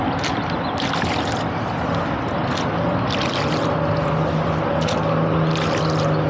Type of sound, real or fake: real